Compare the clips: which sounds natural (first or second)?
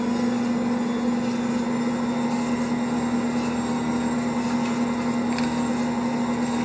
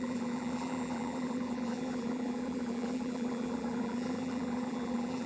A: first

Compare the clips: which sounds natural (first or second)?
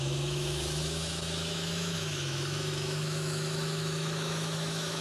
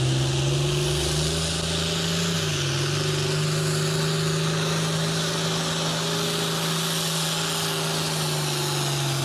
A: second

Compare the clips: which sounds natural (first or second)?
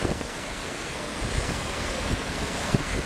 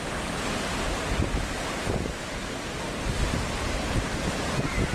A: second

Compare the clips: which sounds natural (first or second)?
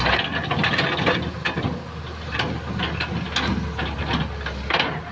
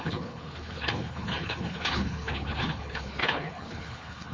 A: first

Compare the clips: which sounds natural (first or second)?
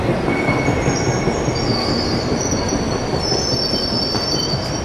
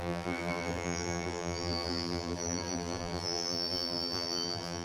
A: first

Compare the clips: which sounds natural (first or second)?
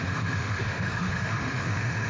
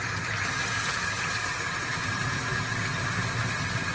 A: second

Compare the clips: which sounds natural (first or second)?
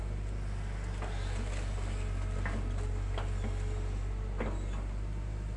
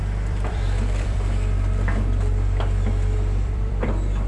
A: first